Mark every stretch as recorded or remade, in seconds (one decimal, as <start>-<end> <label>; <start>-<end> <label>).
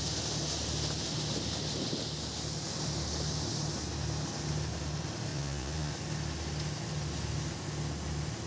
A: 0.0-5.3 recorded; 5.3-5.9 remade; 5.9-8.5 recorded